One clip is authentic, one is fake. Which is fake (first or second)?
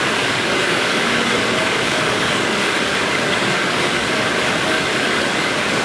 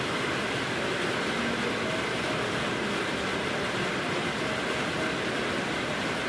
first